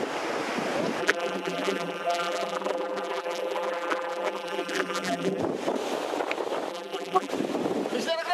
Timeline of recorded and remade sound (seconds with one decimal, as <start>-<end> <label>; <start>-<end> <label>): 0.0-1.0 recorded; 1.0-5.4 remade; 5.4-6.7 recorded; 6.7-7.3 remade; 7.3-8.3 recorded